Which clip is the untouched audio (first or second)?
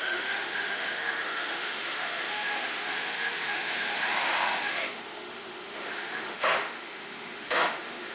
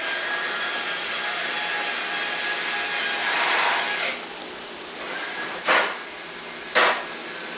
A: second